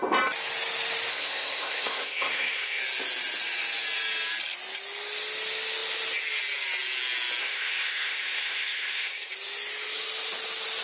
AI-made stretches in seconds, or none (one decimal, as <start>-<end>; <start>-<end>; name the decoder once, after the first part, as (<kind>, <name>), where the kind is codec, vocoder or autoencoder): 1.1-2.8 (codec, SNAC); 7.4-9.3